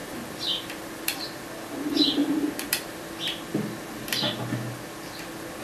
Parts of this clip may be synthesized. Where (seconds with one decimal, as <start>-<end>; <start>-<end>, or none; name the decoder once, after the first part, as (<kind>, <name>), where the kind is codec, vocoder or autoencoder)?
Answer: 0.0-1.2 (vocoder, BigVGAN v2); 2.2-3.0